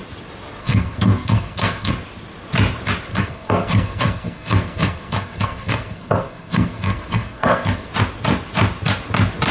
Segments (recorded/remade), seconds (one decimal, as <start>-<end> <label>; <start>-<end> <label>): 0.0-0.6 recorded; 0.6-1.9 remade; 1.9-3.1 recorded; 3.1-7.9 remade; 7.9-9.5 recorded